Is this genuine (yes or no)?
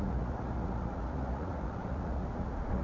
no